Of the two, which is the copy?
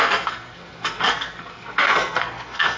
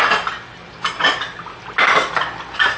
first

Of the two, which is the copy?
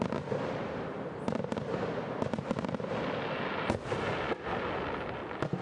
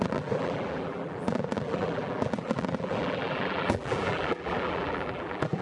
second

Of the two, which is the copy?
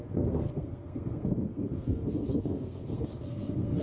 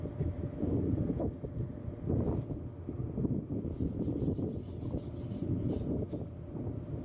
first